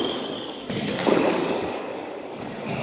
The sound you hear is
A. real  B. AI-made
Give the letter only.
B